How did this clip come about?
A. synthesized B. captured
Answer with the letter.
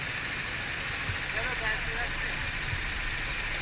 B